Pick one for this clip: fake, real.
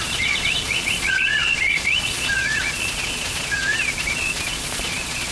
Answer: fake